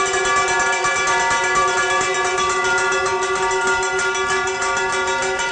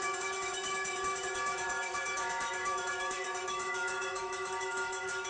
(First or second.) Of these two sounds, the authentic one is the first